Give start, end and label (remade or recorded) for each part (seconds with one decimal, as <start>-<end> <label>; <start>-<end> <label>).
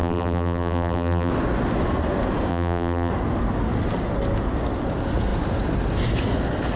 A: 0.0-1.3 remade; 1.3-2.5 recorded; 2.5-3.1 remade; 3.1-6.8 recorded